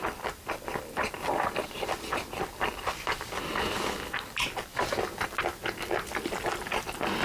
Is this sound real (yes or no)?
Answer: yes